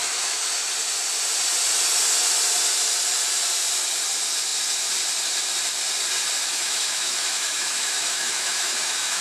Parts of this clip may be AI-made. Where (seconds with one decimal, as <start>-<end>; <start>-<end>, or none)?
0.0-0.5; 6.4-9.2

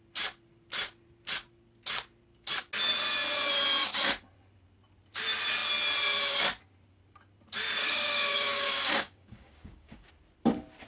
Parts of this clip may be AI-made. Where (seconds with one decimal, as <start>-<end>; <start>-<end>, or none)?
7.8-10.1

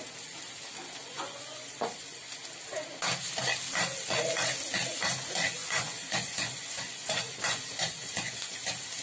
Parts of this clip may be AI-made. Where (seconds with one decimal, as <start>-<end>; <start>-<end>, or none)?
0.8-2.3; 5.6-8.6

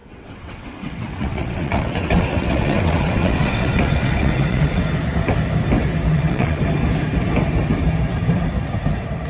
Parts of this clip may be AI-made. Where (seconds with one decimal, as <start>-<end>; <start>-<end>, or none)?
0.0-4.8; 6.1-6.6

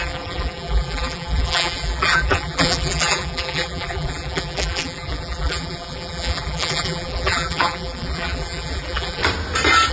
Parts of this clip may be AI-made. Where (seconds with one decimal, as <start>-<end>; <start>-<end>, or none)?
0.0-9.2

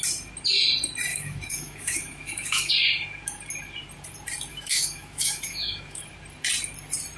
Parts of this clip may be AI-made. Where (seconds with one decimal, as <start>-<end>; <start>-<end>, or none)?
1.1-2.7; 4.5-6.0